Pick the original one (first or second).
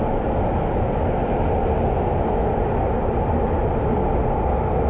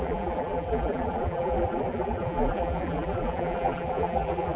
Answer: first